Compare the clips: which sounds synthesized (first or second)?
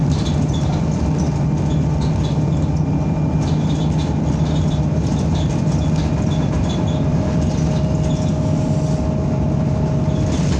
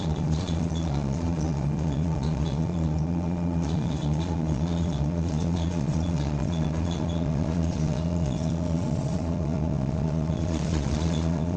second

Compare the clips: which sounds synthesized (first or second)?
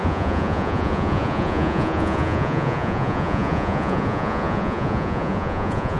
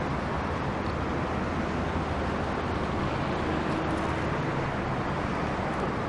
first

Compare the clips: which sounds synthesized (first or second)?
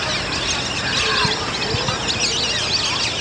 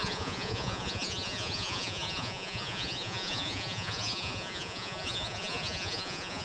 second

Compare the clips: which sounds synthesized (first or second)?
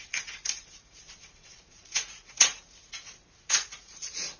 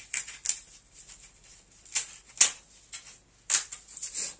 first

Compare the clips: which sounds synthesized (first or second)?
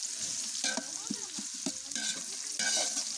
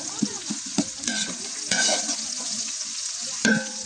second